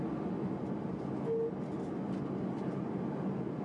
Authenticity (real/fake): real